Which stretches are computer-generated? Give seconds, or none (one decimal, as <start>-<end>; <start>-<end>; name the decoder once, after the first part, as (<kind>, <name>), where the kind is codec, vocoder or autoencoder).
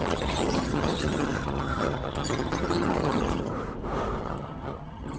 0.0-3.5 (vocoder, HiFi-GAN); 4.2-5.2